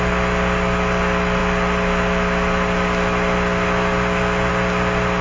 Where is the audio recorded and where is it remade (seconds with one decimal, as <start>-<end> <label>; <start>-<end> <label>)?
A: 0.0-5.2 recorded